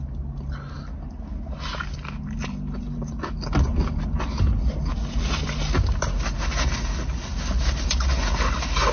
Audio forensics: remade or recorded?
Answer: recorded